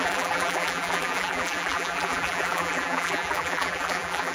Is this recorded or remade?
remade